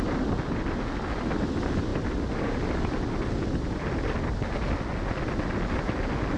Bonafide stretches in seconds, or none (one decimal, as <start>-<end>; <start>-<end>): 0.0-6.4